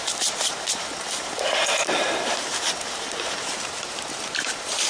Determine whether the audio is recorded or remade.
remade